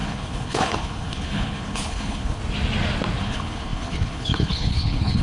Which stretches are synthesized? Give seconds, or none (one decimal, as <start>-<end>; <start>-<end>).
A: 0.0-2.4; 3.2-5.2